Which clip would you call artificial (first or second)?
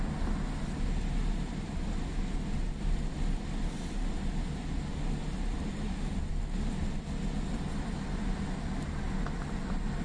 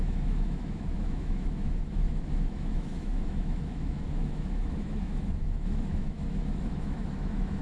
second